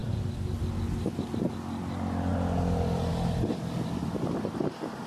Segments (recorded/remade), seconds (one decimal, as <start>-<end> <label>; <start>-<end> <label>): 0.0-5.1 recorded